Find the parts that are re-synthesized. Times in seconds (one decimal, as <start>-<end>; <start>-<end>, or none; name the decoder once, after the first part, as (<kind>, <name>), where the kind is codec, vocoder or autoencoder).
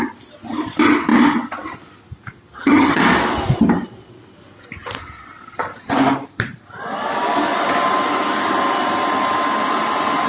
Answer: 2.5-3.0 (vocoder, HiFi-GAN)